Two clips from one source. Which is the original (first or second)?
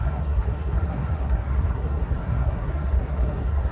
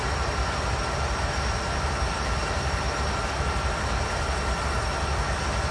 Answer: second